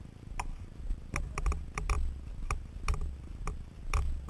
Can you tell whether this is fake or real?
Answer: real